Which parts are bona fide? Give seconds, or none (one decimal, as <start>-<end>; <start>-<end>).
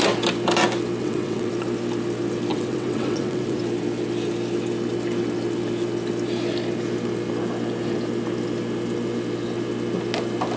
0.0-1.0; 1.5-2.5; 3.6-10.6